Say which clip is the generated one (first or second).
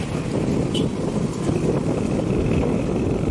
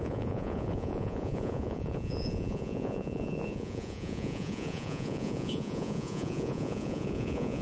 second